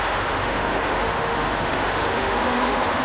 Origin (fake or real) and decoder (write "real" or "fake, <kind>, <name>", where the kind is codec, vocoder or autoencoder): fake, autoencoder, DAC-VAE